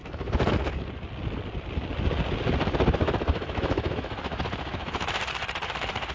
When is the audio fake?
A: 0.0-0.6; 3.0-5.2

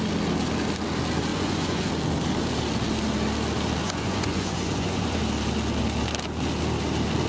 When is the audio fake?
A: 1.3-1.9; 3.8-5.2

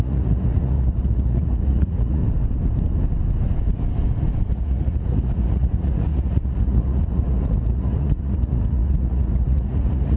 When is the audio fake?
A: 0.0-2.2; 4.5-10.2

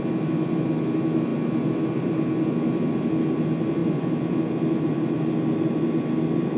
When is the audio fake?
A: none

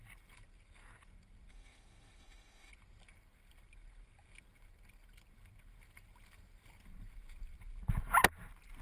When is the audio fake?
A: 1.5-2.7

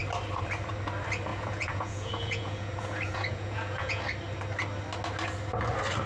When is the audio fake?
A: 1.3-4.0